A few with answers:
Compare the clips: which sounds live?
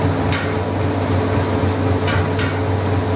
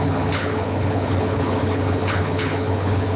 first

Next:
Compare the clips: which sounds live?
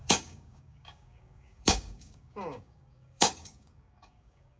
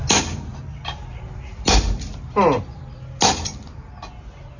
second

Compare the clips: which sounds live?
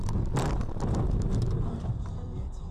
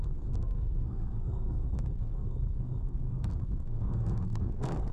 first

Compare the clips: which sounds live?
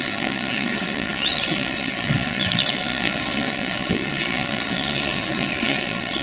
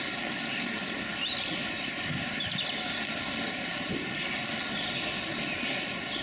second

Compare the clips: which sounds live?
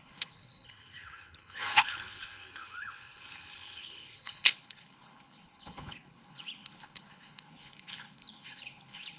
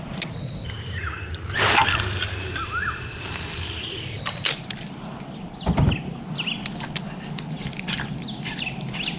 second